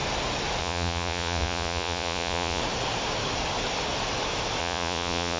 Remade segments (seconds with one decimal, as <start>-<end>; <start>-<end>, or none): 0.6-2.6; 4.6-5.4